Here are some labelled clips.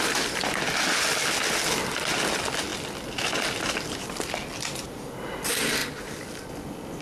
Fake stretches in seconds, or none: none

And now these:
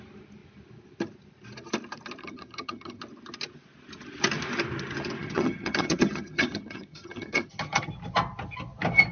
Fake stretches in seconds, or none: 2.2-3.0 (vocoder, HiFi-GAN); 5.2-7.9

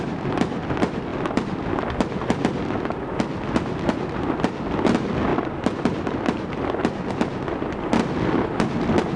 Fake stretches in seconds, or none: none

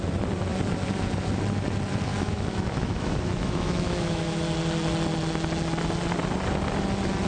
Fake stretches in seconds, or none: 2.1-4.4 (autoencoder, DAC-VAE)

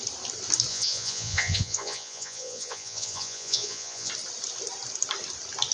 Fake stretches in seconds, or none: 0.7-4.1 (vocoder, Vocos)

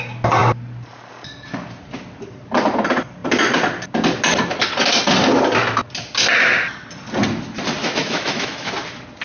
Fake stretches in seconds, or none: 7.8-8.7 (autoencoder, DAC-VAE)

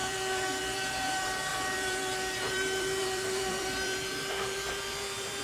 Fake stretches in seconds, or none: 0.0-5.4 (vocoder, BigVGAN v2)

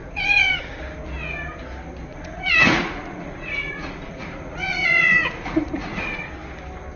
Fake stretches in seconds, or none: 0.0-0.8 (vocoder, Vocos); 2.1-6.3